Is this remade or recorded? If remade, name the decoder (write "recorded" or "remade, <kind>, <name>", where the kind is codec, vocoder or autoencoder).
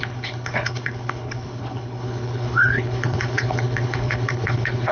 remade, codec, HILCodec